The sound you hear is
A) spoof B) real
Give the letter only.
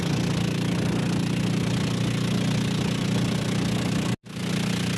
B